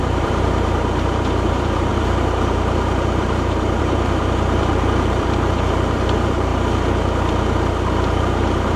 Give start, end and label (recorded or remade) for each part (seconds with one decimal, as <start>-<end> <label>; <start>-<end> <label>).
0.0-6.5 remade; 6.5-8.2 recorded; 8.2-8.8 remade